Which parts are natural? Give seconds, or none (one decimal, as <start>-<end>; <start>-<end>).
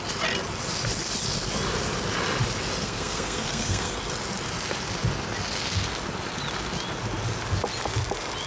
0.0-2.8; 3.9-8.5